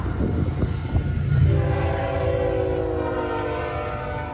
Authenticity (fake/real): real